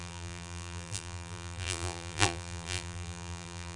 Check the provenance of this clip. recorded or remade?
remade